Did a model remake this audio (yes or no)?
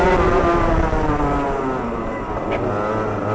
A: no